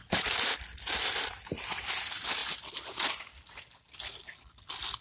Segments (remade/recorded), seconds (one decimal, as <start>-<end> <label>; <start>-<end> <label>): 0.0-5.0 recorded